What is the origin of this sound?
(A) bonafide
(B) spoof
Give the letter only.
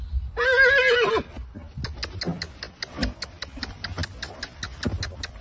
A